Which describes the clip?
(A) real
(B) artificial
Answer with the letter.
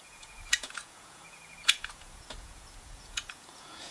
B